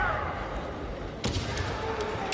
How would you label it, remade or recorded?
recorded